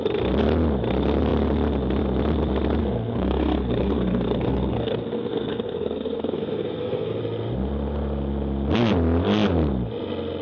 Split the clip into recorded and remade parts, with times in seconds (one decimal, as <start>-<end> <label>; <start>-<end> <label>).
0.0-2.8 recorded; 2.8-7.2 remade; 7.2-10.4 recorded